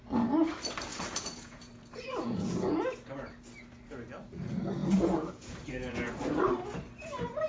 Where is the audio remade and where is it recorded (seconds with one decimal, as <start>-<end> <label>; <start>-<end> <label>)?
0.0-0.9 recorded; 0.9-2.5 remade; 2.5-4.8 recorded; 4.8-6.1 remade; 6.1-7.5 recorded